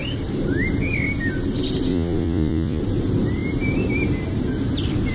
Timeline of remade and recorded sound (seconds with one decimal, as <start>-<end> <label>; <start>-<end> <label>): 0.0-1.9 recorded; 1.9-2.8 remade; 2.8-5.1 recorded